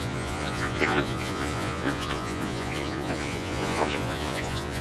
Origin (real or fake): fake